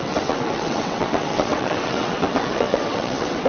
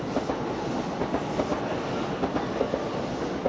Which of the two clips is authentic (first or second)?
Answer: second